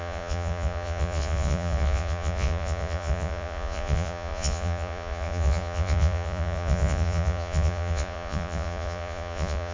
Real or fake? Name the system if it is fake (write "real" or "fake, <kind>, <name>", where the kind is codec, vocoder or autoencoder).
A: fake, vocoder, Vocos